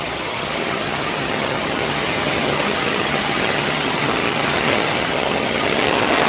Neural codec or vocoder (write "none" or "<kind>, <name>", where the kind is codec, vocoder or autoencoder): vocoder, HiFi-GAN